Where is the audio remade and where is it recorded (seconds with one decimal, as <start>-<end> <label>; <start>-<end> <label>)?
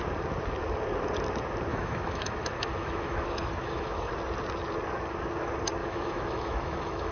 0.0-1.7 recorded; 1.7-4.1 remade; 4.1-5.8 recorded; 5.8-7.1 remade